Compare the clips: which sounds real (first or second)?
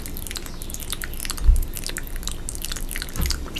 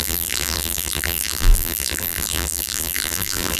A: first